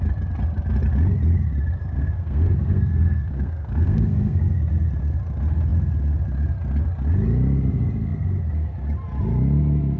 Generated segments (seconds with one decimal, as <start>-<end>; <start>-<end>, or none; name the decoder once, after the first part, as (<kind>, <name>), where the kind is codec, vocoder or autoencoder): 1.8-4.4 (codec, SNAC)